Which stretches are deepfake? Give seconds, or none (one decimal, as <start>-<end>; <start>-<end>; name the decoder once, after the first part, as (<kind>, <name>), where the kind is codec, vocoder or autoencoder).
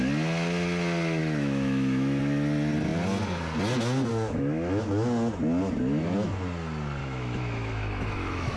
1.2-2.2 (autoencoder, DAC-VAE); 4.1-4.8; 7.0-8.6